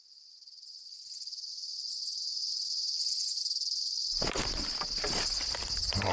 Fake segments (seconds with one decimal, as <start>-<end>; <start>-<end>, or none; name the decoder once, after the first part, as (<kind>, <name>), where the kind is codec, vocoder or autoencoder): none